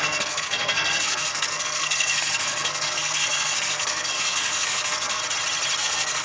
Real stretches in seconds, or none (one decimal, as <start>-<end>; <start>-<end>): 5.2-5.8